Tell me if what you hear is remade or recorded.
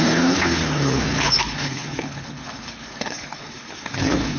remade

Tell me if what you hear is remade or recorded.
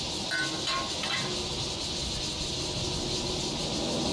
recorded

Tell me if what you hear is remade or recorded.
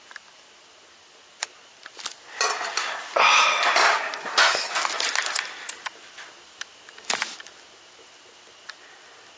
recorded